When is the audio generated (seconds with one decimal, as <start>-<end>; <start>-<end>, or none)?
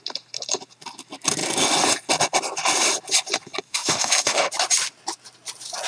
3.7-4.5